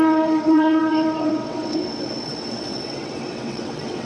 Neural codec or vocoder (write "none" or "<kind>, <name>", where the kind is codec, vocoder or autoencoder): vocoder, WaveNeXt